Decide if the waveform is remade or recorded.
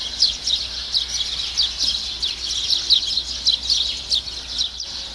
recorded